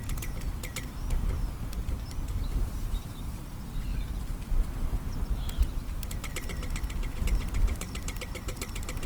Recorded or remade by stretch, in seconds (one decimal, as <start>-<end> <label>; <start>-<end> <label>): 0.0-2.3 recorded; 2.3-3.4 remade; 3.4-9.1 recorded